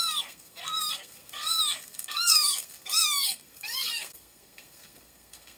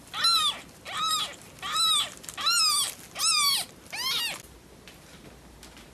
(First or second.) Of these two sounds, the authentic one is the second